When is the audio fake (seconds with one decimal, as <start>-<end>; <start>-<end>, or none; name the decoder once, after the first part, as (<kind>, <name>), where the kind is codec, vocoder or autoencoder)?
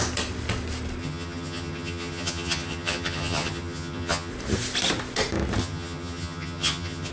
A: 1.0-4.3 (vocoder, HiFi-GAN); 5.6-7.1